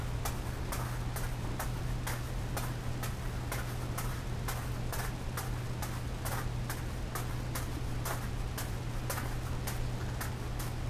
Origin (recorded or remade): recorded